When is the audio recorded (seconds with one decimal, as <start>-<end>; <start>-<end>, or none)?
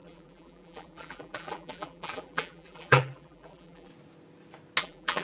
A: 3.9-4.8